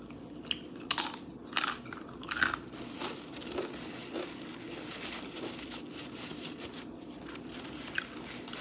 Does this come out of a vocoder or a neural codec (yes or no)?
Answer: no